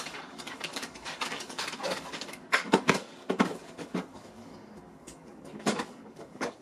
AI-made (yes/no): yes